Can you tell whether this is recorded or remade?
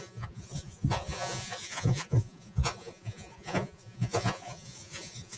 remade